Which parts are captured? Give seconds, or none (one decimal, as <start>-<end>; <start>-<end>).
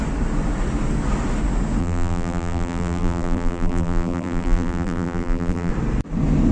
0.0-1.8; 5.7-6.5